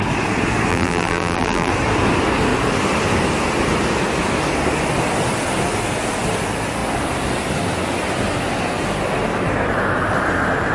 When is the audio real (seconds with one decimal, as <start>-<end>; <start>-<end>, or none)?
0.0-0.7; 1.7-10.7